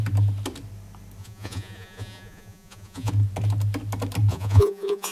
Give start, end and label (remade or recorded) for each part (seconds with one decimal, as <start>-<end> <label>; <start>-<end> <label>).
0.0-1.2 recorded; 1.2-3.1 remade; 3.1-4.3 recorded; 4.3-5.1 remade